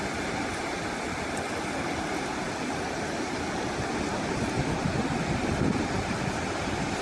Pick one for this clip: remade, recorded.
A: recorded